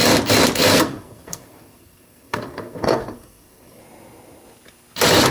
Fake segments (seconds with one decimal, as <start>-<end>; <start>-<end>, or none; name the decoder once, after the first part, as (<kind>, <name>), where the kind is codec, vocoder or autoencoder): 0.6-3.8 (codec, SNAC)